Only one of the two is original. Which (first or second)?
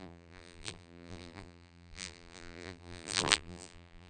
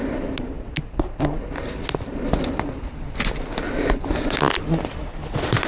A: second